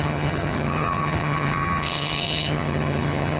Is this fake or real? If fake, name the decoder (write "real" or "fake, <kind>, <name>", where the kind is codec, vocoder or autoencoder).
fake, vocoder, HiFi-GAN